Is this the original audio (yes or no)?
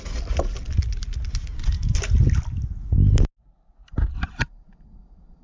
yes